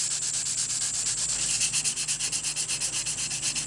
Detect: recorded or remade recorded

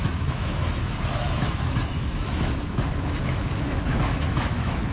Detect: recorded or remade remade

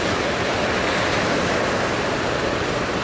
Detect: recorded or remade recorded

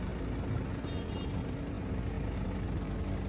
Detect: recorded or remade recorded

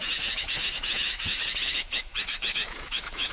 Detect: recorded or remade remade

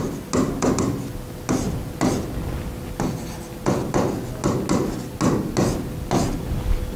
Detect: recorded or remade recorded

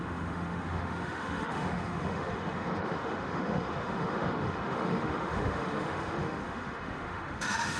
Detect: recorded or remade remade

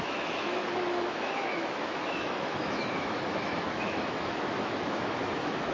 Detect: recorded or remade remade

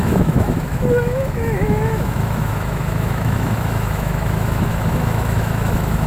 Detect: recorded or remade remade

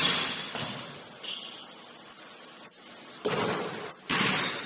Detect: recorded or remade recorded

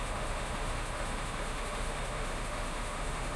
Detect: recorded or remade remade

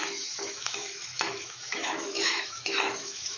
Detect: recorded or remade remade